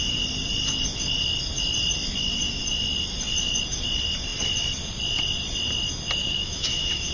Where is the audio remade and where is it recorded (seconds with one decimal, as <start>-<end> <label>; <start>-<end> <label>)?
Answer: 0.0-6.2 recorded; 6.2-7.1 remade